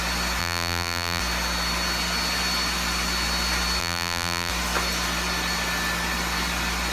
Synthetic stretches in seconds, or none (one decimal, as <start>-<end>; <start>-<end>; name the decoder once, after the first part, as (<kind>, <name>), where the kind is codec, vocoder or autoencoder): 0.4-1.2 (vocoder, BigVGAN v2); 3.8-4.5